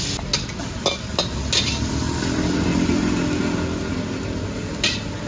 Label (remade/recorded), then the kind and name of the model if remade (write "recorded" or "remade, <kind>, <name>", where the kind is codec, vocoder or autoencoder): recorded